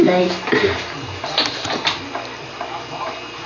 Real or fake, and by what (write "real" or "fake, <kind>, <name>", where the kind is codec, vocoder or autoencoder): real